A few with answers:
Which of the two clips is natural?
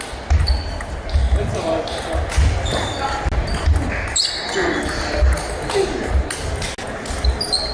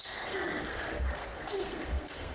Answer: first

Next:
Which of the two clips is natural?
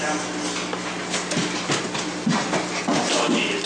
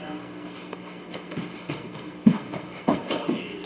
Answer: first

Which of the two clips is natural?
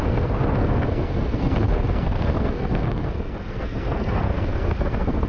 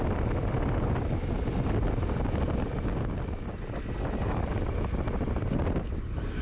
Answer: second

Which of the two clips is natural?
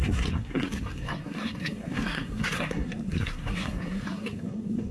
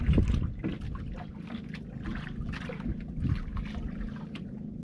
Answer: second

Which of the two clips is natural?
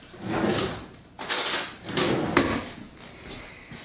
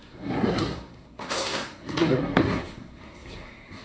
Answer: first